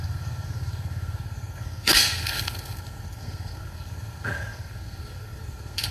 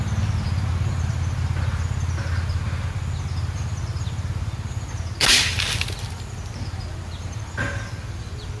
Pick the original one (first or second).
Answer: second